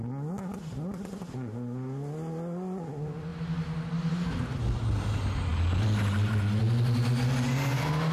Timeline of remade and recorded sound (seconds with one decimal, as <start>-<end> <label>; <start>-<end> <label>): 0.0-8.1 recorded